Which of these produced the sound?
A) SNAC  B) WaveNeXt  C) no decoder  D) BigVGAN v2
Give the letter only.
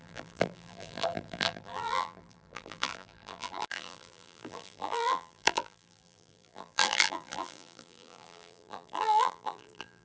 D